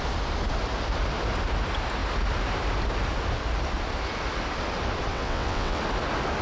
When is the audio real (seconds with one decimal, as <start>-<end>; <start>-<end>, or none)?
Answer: 0.0-5.1; 5.8-6.4